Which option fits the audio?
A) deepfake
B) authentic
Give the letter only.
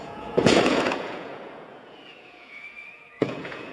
A